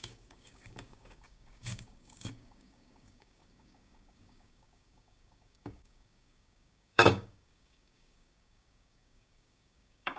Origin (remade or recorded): remade